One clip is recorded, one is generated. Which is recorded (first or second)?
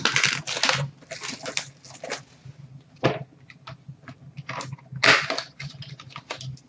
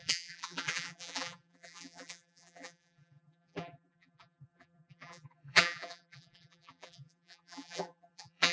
first